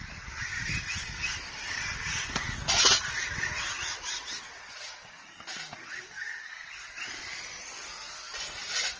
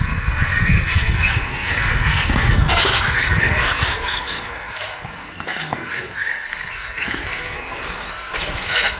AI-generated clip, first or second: second